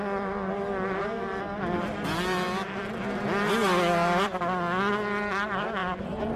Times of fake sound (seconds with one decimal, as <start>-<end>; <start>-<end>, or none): none